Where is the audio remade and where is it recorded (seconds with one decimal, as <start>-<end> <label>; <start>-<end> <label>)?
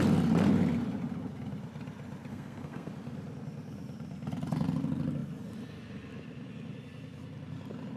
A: 0.0-2.3 recorded; 2.3-2.9 remade; 2.9-8.0 recorded